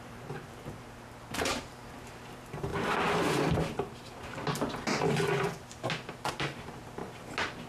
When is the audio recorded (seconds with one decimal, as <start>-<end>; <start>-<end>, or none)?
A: 2.7-6.3; 7.0-7.7